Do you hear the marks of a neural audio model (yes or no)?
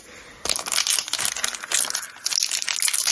no